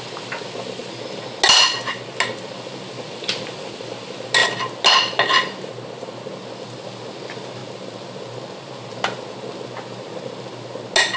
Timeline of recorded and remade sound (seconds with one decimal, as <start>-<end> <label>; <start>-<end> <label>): 0.0-11.2 recorded